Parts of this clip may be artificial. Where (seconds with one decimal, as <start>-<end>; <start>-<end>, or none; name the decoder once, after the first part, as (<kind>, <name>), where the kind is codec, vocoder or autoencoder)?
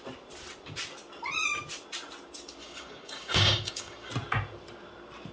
2.6-4.1 (codec, DAC)